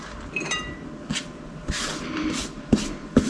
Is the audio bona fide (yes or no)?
no